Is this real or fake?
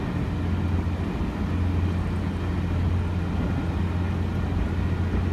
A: real